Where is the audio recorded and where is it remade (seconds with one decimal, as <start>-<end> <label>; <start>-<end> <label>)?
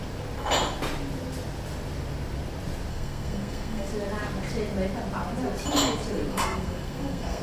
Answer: 0.0-2.9 recorded; 2.9-3.9 remade; 3.9-6.3 recorded; 6.3-7.4 remade